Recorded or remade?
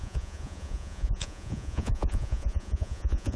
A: remade